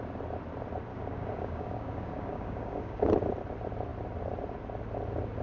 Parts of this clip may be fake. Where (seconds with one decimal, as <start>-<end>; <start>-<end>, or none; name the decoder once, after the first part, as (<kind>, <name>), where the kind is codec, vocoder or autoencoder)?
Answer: 0.9-3.1 (codec, DAC)